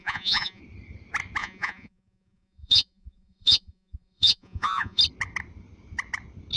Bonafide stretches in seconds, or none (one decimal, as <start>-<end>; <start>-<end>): 0.6-1.4; 5.0-6.6